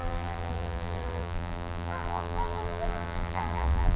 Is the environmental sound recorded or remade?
remade